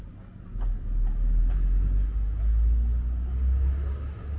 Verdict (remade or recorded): recorded